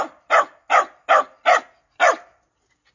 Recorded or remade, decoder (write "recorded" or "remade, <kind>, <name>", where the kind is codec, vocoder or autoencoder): recorded